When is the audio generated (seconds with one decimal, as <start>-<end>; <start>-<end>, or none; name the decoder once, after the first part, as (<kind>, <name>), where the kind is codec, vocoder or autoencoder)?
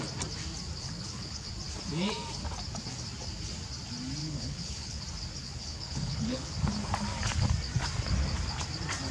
0.8-1.5 (codec, HILCodec); 4.2-5.0; 5.4-6.5